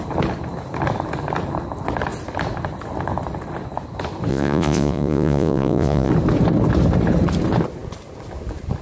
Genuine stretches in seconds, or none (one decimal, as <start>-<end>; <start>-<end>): 0.0-4.3; 6.1-8.8